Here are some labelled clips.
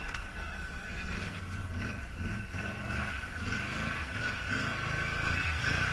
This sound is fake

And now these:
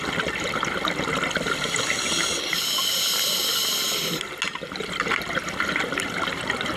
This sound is real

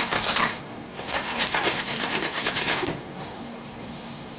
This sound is fake